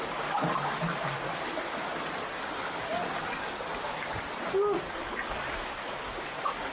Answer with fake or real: real